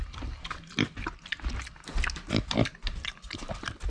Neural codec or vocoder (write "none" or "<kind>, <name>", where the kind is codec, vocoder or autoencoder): none